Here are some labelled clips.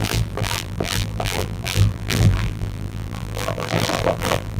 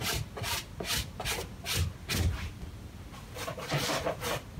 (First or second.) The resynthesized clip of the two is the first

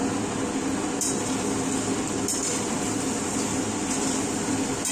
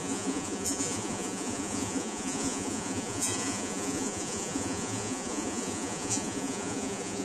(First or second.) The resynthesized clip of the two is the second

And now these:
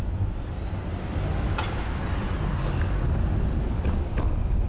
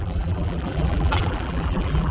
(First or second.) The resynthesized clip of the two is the second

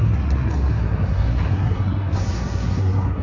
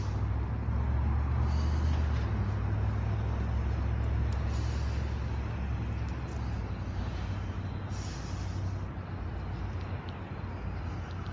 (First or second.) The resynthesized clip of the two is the first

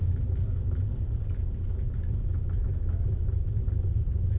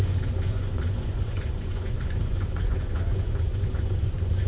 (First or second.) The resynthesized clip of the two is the second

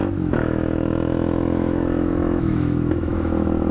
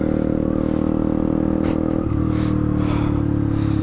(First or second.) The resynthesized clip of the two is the first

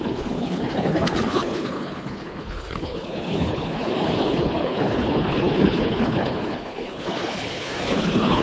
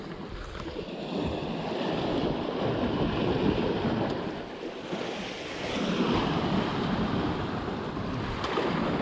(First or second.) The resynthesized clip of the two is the first